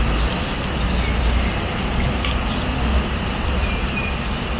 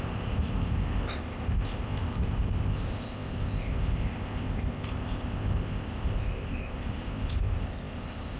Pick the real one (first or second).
first